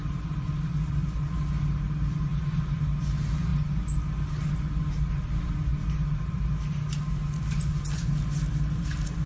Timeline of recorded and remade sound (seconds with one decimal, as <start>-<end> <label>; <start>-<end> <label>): 0.0-0.7 remade; 0.7-2.3 recorded; 2.3-2.8 remade; 2.8-9.3 recorded